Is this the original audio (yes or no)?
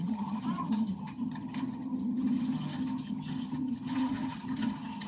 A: no